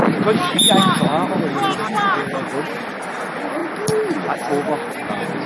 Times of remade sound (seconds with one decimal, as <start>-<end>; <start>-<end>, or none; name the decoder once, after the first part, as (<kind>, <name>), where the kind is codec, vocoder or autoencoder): none